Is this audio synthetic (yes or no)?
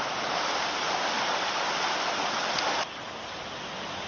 no